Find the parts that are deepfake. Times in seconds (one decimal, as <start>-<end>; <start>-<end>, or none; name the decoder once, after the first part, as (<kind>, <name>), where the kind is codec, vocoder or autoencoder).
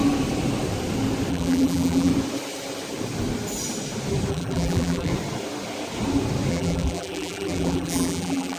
1.3-2.1 (vocoder, BigVGAN v2); 4.3-5.1; 6.5-8.6